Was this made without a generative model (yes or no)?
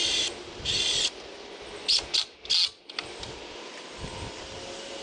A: yes